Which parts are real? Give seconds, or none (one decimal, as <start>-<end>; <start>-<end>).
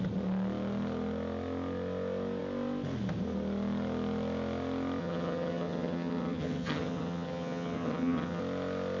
0.0-5.0; 8.4-9.0